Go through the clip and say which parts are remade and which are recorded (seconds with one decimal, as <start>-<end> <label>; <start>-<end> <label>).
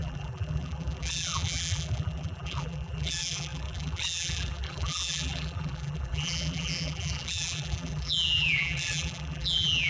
0.0-9.9 remade